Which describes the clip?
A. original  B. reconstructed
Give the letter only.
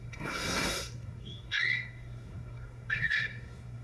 B